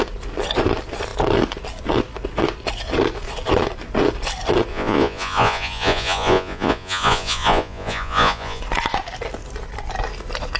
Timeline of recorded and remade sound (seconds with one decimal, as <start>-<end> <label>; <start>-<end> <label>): 0.0-4.7 recorded; 4.7-8.6 remade; 8.6-10.6 recorded